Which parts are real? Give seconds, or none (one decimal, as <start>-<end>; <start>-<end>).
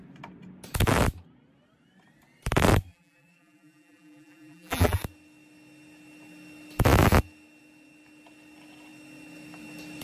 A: 0.0-2.9; 5.0-10.0